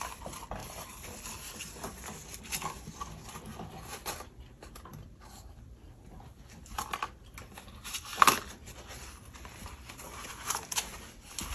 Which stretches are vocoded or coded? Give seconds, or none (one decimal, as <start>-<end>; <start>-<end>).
0.6-2.4; 3.5-5.8; 8.1-10.6